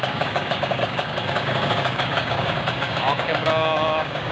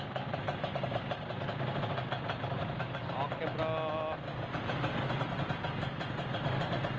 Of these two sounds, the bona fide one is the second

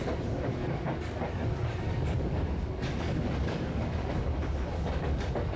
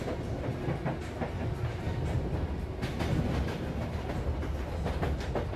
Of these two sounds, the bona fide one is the second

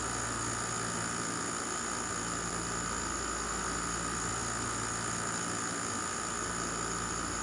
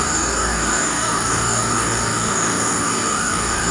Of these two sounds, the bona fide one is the first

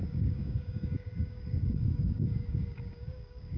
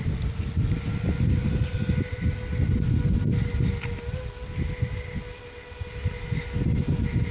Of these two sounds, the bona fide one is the second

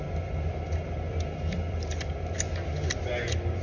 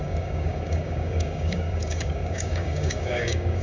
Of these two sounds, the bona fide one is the first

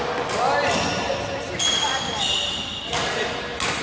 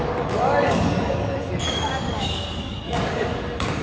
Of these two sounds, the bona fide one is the first